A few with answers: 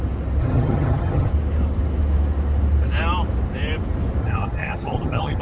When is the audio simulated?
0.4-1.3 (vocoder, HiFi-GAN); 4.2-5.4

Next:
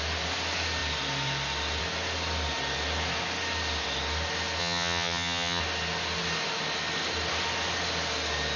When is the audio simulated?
4.6-5.6 (vocoder, HiFi-GAN)

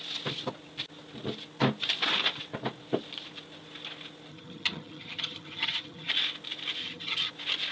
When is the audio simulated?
4.3-6.1 (vocoder, HiFi-GAN); 6.8-7.3

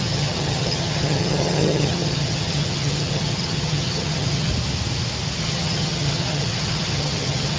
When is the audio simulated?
0.0-4.5 (vocoder, HiFi-GAN); 5.4-7.6

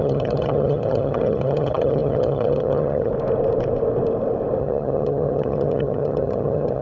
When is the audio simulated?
0.0-3.1 (vocoder, HiFi-GAN); 4.6-6.8

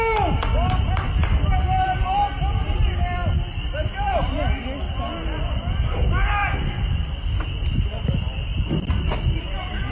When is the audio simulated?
none